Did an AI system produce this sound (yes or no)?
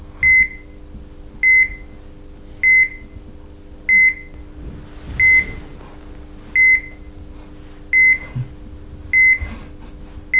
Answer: no